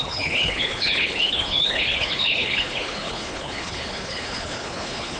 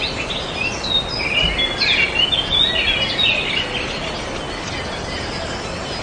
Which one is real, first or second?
second